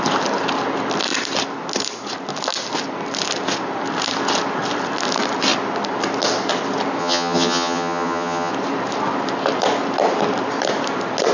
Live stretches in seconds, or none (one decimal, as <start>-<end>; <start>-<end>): 0.0-7.0; 8.5-11.3

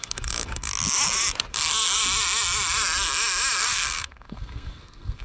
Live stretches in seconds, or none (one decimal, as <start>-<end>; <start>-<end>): 0.7-1.5; 2.0-3.6

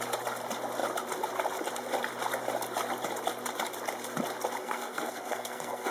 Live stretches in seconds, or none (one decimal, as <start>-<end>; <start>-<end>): 0.0-4.6

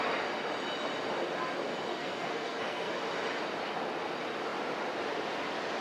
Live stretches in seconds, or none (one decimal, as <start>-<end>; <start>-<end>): 0.0-1.9; 3.0-5.8